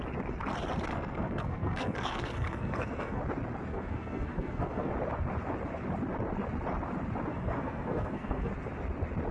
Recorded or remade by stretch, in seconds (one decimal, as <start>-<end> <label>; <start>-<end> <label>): 0.0-0.9 recorded; 0.9-3.2 remade; 3.2-3.7 recorded; 3.7-4.9 remade; 4.9-7.3 recorded; 7.3-8.5 remade; 8.5-9.3 recorded